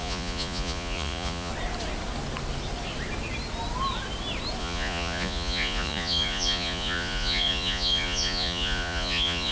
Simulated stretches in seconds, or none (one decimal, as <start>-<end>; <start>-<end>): 0.0-1.5; 4.6-9.5